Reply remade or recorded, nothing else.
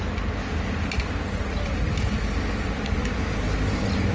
recorded